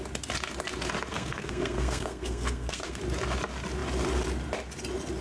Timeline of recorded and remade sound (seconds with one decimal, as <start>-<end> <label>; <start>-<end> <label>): 0.0-1.1 recorded; 1.1-3.0 remade; 3.0-5.2 recorded